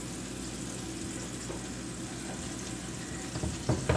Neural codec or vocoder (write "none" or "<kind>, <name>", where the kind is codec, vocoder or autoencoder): none